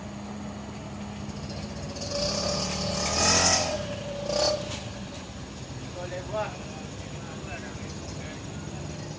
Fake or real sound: real